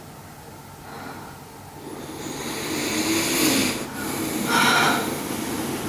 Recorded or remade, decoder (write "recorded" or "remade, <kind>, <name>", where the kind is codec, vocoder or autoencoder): recorded